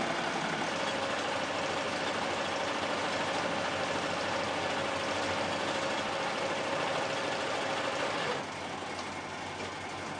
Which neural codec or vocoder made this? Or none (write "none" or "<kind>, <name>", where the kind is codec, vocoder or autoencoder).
none